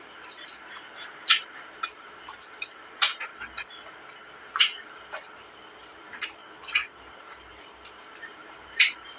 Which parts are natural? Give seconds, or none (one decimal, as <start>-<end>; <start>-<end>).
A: 3.3-4.4; 6.4-7.2